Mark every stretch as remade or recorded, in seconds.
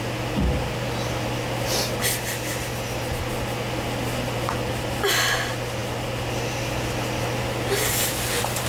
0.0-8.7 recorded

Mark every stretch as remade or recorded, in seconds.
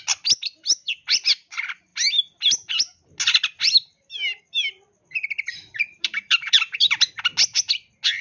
0.0-5.6 recorded; 5.6-7.1 remade; 7.1-8.2 recorded